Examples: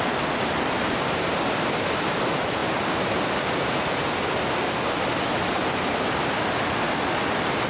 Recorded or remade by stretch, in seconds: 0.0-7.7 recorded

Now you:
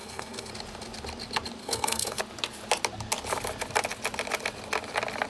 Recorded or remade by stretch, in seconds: 0.0-0.5 remade; 0.5-1.6 recorded; 1.6-2.2 remade; 2.2-5.3 recorded

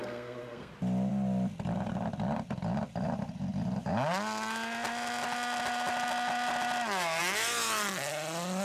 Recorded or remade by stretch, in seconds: 0.0-0.7 remade; 0.7-8.6 recorded

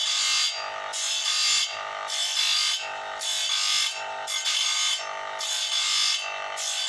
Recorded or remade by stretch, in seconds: 0.0-6.9 recorded

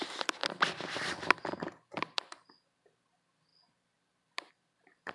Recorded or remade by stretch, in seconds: 0.0-5.1 recorded

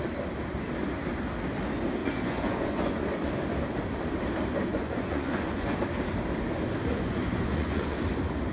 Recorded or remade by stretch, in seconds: 0.0-2.0 recorded; 2.0-3.3 remade; 3.3-4.7 recorded; 4.7-5.8 remade; 5.8-6.9 recorded; 6.9-8.0 remade; 8.0-8.5 recorded

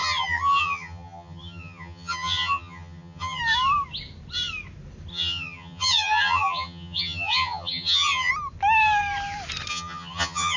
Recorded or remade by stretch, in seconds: 0.0-3.4 remade; 3.4-5.1 recorded; 5.1-8.3 remade; 8.3-9.7 recorded; 9.7-10.6 remade

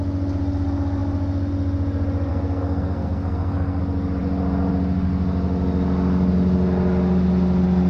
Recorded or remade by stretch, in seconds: 0.0-2.3 recorded; 2.3-3.8 remade; 3.8-7.9 recorded